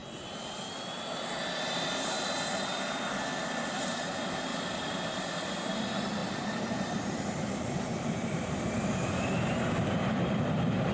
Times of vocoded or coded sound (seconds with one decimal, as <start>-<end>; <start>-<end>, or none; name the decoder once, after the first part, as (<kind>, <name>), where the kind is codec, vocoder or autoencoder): 1.6-3.3 (vocoder, BigVGAN v2); 3.8-10.9